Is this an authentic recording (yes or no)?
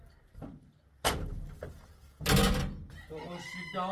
yes